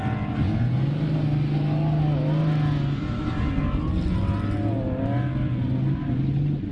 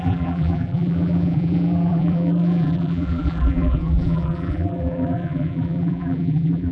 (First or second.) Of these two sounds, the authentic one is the first